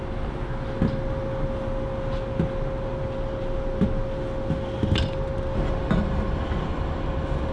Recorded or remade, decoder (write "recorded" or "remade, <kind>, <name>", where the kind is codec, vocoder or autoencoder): recorded